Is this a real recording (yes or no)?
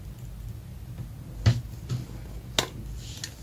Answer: yes